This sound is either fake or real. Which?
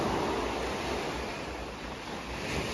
real